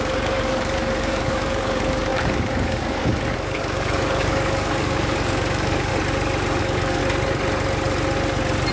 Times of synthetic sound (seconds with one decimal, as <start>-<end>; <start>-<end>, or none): 0.0-5.9; 6.6-7.0